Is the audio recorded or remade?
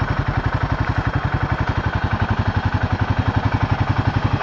recorded